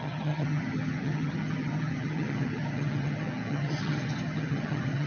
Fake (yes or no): yes